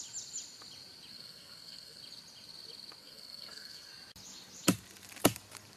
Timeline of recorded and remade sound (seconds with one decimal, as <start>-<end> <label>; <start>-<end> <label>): 0.0-1.1 recorded; 1.1-2.0 remade; 2.0-3.0 recorded; 3.0-3.9 remade; 3.9-5.8 recorded